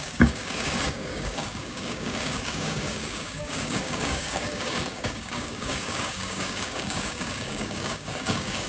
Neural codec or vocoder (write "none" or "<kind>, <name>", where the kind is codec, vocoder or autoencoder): codec, DAC